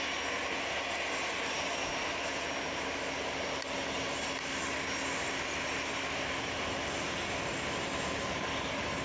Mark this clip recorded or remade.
recorded